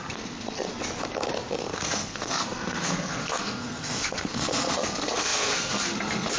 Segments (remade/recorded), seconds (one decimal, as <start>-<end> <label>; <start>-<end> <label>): 0.0-0.7 remade; 0.7-1.6 recorded; 1.6-6.4 remade